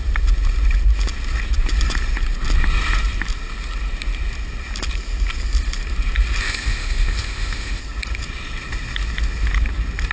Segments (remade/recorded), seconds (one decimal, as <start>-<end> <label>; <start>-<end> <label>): 0.0-6.4 recorded; 6.4-7.8 remade; 7.8-10.1 recorded